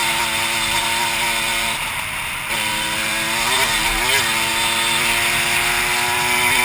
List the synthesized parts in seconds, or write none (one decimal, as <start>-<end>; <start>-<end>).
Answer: 1.5-3.1

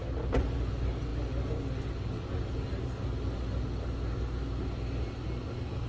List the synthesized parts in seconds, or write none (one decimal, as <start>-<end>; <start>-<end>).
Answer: none

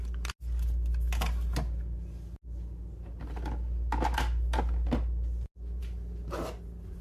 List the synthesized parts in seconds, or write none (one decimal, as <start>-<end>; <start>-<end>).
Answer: none